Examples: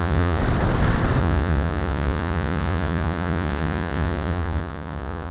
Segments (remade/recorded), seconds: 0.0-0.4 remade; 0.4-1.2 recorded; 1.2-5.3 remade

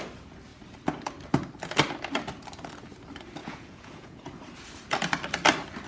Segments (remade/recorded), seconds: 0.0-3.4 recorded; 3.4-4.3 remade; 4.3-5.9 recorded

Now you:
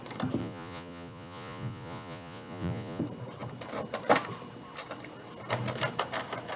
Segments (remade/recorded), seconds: 0.0-0.4 recorded; 0.4-3.0 remade; 3.0-6.6 recorded